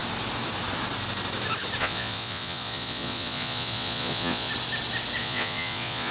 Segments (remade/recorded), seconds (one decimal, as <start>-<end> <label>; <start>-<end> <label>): 0.0-1.8 recorded; 1.8-4.5 remade; 4.5-5.2 recorded; 5.2-6.1 remade